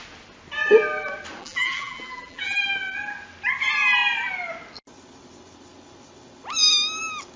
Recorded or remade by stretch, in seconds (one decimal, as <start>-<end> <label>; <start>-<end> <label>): 0.0-1.4 recorded; 1.4-2.6 remade; 2.6-7.4 recorded